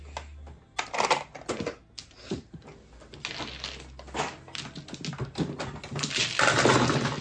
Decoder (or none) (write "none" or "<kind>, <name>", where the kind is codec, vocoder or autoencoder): none